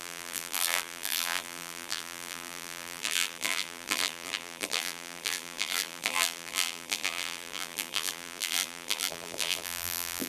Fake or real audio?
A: fake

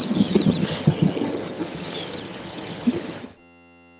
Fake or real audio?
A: fake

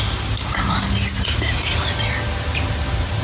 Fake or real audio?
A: real